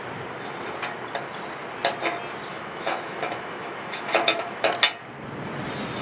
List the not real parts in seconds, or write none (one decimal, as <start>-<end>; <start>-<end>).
2.5-4.7